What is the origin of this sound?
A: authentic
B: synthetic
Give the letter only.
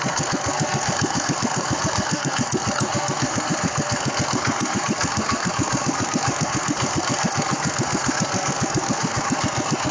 B